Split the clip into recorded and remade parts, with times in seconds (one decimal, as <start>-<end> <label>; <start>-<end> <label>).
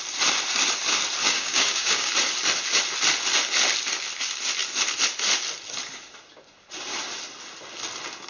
0.0-1.2 recorded; 1.2-2.1 remade; 2.1-8.3 recorded